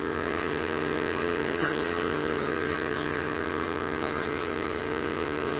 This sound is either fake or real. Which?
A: fake